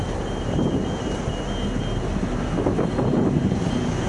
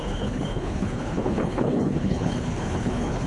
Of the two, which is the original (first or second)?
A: first